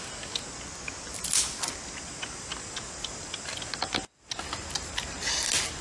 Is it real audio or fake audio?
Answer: real